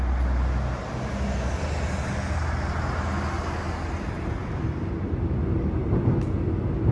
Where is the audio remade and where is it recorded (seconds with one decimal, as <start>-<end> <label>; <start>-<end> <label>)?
0.0-6.9 recorded